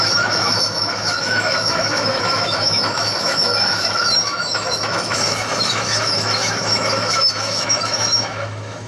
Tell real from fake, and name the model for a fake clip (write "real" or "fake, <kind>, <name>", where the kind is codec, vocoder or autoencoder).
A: fake, autoencoder, DAC-VAE